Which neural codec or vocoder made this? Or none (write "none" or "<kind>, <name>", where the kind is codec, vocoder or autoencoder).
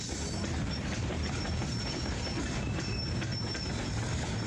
vocoder, BigVGAN v2